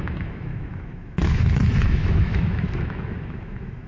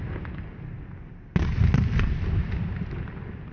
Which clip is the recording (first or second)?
second